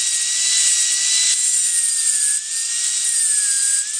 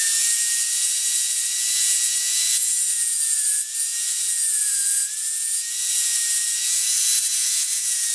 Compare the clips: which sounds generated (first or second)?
second